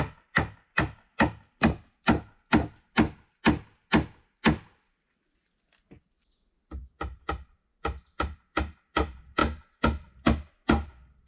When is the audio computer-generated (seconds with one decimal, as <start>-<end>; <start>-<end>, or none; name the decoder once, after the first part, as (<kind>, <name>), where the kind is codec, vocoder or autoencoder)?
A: none